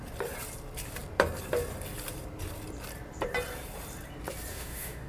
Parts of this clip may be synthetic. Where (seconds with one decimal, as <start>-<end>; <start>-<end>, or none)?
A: 4.5-5.1